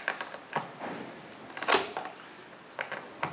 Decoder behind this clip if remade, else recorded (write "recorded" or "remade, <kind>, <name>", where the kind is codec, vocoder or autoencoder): recorded